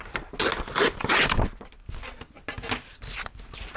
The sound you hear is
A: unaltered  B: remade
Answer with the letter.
A